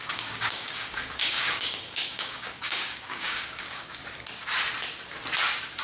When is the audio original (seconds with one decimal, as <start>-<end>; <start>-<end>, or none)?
4.0-5.8